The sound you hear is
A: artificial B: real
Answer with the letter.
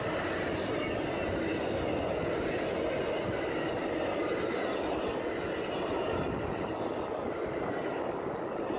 B